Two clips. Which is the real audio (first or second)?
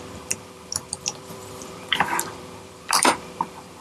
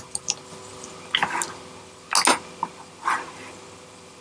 second